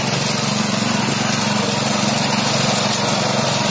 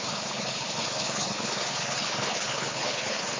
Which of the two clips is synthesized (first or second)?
second